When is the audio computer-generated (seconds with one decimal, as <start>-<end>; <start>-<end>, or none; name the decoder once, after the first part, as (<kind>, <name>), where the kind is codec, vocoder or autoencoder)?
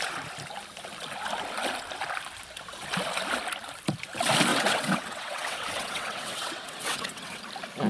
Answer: 4.5-7.4 (vocoder, WaveNeXt)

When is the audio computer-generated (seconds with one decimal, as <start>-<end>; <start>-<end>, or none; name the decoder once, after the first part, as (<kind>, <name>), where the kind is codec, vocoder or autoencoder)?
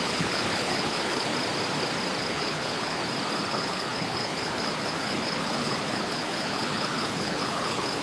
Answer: 0.0-1.3 (codec, HILCodec); 2.2-3.0; 3.5-8.0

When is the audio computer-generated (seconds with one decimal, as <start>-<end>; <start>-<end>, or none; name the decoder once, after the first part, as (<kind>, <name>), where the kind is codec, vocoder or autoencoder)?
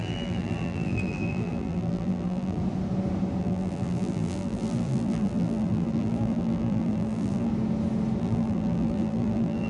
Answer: 0.0-2.6 (vocoder, BigVGAN v2); 3.4-7.5; 8.2-9.7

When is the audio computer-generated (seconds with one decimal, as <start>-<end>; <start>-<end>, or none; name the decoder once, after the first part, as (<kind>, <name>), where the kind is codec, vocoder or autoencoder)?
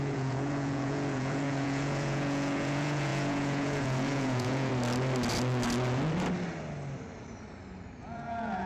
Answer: 0.0-4.7 (vocoder, Vocos); 8.0-8.7